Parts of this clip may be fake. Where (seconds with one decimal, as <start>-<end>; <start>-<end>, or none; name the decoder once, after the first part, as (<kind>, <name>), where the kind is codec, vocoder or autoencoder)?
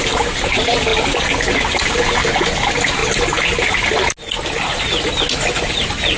none